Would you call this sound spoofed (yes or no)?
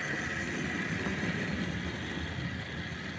no